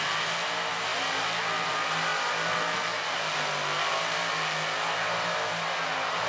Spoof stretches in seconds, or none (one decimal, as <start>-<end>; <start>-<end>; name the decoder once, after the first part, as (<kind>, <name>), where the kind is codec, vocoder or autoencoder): none